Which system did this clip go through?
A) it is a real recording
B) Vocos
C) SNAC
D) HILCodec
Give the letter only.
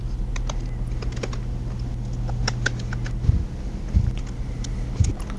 A